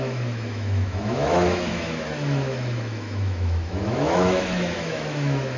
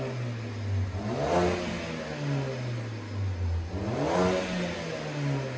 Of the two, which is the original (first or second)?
second